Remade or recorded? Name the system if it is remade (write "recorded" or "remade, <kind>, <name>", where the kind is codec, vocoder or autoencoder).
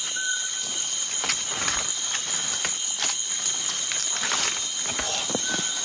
recorded